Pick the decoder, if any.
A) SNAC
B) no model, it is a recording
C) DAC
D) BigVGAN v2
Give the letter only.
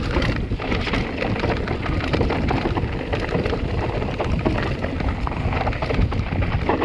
B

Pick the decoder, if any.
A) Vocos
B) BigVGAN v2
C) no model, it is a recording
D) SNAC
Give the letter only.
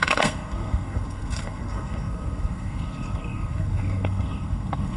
D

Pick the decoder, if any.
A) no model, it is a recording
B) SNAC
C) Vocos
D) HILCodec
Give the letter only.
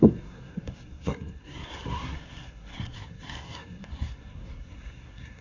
B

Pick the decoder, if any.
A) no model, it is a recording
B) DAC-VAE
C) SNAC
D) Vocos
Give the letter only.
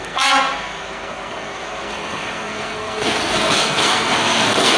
C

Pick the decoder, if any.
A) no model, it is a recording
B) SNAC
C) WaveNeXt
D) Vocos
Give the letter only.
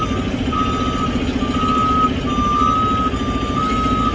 A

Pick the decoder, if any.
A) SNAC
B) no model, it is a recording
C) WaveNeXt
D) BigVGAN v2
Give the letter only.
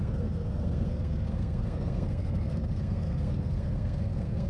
A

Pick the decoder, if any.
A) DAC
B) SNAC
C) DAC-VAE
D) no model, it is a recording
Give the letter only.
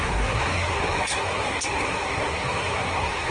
B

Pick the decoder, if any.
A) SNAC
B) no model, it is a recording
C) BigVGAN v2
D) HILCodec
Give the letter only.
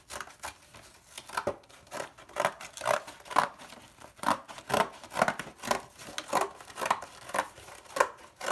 B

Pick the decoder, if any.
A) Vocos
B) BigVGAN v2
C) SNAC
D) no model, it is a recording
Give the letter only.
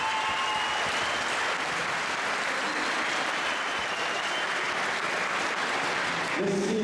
D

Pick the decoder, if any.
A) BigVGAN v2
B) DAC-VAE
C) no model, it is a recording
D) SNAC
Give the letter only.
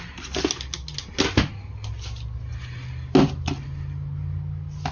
C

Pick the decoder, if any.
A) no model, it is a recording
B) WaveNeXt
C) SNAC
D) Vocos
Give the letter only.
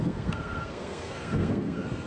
C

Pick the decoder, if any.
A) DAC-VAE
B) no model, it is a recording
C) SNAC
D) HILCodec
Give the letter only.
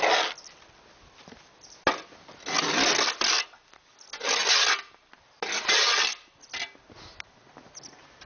B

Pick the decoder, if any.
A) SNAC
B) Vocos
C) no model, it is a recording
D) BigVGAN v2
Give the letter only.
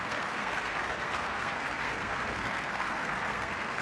A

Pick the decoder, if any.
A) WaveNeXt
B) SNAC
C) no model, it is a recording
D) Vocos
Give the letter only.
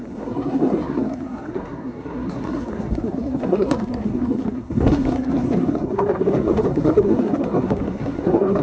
B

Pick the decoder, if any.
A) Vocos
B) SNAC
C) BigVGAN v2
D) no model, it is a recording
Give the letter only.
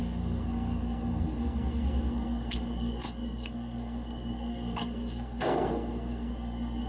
B